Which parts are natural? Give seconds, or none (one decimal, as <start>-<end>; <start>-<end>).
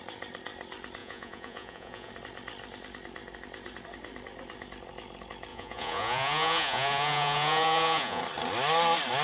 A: 0.0-1.0; 2.1-5.5; 8.2-9.2